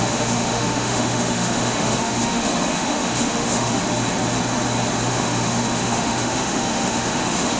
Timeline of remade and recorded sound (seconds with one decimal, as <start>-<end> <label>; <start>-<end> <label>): 0.0-3.8 remade; 3.8-5.1 recorded; 5.1-7.6 remade